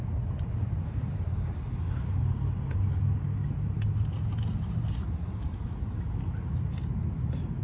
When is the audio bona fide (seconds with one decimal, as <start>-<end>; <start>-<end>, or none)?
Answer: 0.0-7.6